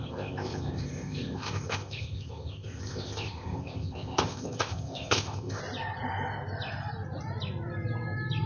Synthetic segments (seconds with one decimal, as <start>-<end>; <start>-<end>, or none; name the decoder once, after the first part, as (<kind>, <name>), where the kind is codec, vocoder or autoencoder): 0.0-5.6 (codec, ZipCodec)

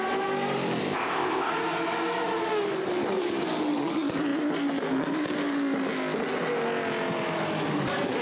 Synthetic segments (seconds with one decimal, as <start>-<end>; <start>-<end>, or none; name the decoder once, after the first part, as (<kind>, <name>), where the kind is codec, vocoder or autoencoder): 0.8-1.5 (codec, ZipCodec)

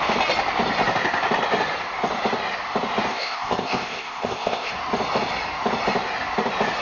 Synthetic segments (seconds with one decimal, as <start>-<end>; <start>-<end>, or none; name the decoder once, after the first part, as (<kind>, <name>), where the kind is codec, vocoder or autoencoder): 3.1-4.7 (codec, ZipCodec)

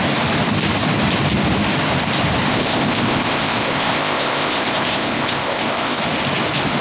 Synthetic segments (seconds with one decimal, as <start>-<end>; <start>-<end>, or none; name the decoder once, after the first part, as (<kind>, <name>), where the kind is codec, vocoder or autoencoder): 2.5-6.0 (codec, ZipCodec)

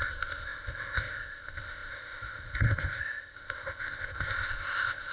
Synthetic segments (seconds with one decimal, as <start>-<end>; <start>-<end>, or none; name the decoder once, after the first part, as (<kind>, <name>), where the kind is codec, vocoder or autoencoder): 0.0-5.1 (codec, ZipCodec)